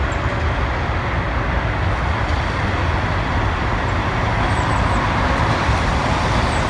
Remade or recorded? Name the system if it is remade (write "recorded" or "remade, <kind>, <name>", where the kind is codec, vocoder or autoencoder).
recorded